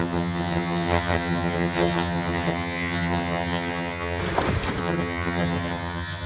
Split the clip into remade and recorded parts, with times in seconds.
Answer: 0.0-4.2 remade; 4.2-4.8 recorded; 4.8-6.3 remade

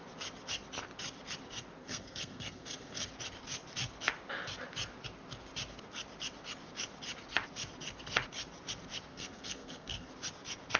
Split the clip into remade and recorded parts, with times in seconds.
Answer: 0.0-1.8 recorded; 1.8-3.1 remade; 3.1-9.1 recorded; 9.1-10.1 remade; 10.1-10.8 recorded

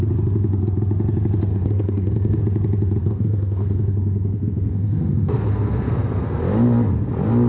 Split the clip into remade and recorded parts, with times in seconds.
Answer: 0.0-1.5 recorded; 1.5-2.4 remade; 2.4-3.0 recorded; 3.0-6.4 remade; 6.4-7.5 recorded

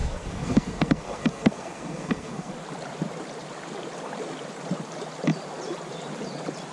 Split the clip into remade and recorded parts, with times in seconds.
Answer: 0.0-2.5 remade; 2.5-6.7 recorded